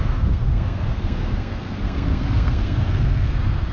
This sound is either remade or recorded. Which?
remade